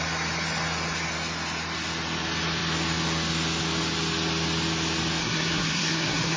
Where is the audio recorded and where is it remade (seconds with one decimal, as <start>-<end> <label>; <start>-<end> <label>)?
0.0-5.2 recorded; 5.2-6.4 remade